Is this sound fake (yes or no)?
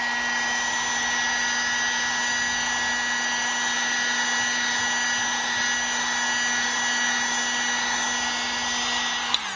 no